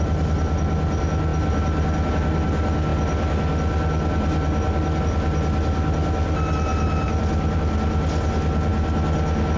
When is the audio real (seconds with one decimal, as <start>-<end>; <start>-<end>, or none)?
0.0-6.7; 7.6-9.6